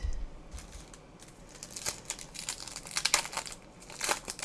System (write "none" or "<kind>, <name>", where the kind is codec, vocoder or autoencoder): none